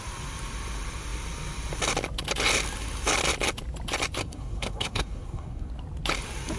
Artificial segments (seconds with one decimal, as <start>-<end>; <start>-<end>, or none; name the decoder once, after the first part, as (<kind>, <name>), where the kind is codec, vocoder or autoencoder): 4.2-5.7 (codec, SNAC)